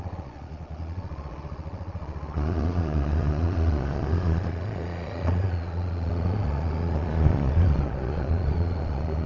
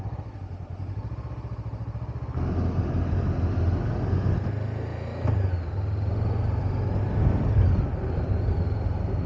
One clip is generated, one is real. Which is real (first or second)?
second